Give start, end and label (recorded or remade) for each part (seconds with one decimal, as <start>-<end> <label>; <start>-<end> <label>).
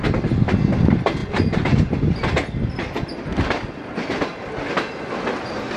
0.0-5.8 recorded